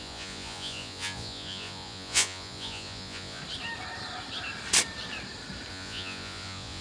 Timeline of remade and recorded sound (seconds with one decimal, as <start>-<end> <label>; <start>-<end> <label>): 0.0-3.4 remade; 3.4-5.7 recorded; 5.7-6.8 remade